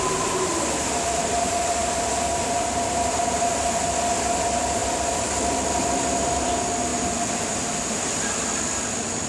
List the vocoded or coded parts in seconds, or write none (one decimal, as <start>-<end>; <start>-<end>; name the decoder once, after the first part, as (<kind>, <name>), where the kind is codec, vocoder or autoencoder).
4.8-5.3 (vocoder, BigVGAN v2)